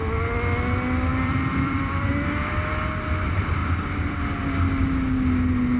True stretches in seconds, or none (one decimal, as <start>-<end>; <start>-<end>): 0.0-1.1; 2.1-3.6; 4.3-5.8